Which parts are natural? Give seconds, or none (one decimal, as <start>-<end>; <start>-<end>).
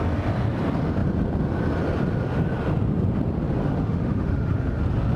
0.0-3.6; 4.8-5.2